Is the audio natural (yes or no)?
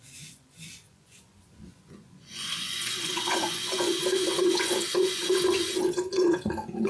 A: no